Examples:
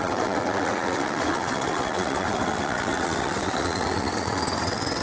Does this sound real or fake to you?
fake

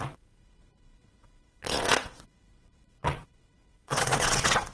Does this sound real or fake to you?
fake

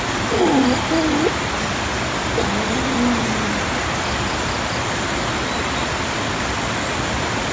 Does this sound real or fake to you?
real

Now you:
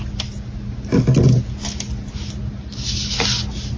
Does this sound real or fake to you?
real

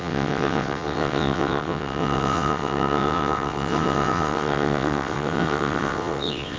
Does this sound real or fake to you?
fake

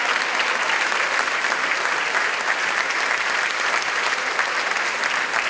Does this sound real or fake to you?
real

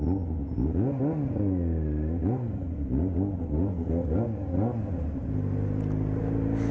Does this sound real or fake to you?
real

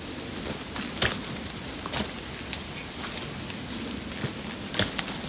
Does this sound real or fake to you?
real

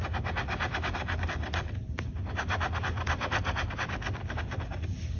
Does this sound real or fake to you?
real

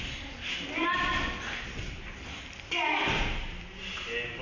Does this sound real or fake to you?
real